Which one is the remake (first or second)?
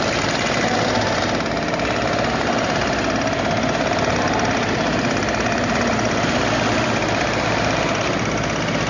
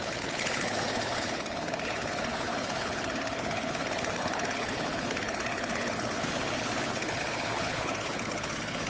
second